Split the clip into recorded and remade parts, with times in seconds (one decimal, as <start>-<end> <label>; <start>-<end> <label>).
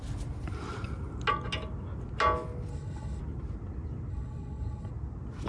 0.0-2.7 recorded; 2.7-3.2 remade; 3.2-4.1 recorded; 4.1-4.9 remade; 4.9-5.5 recorded